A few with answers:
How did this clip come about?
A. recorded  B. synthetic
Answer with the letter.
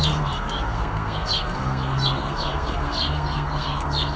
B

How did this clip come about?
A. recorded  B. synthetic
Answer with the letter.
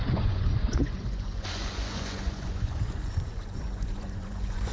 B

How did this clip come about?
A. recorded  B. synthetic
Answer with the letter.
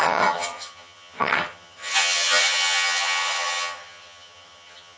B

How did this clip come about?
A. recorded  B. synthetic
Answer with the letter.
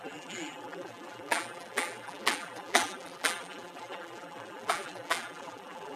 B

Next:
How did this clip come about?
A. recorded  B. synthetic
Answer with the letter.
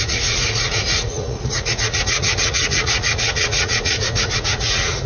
B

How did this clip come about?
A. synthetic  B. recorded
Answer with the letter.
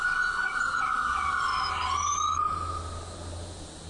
B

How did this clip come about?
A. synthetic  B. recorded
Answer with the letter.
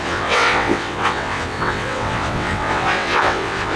A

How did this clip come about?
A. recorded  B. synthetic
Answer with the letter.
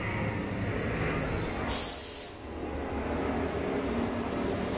A